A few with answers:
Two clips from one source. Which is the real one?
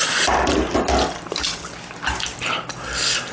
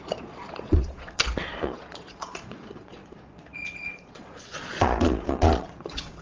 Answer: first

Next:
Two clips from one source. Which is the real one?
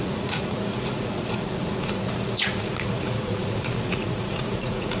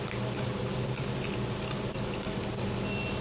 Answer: second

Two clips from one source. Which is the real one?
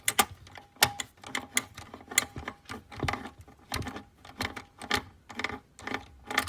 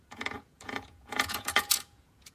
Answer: first